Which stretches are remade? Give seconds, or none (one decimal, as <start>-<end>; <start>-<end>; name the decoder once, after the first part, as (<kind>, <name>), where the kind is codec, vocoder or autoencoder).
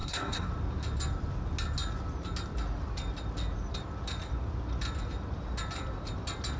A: 0.0-0.5 (codec, SNAC)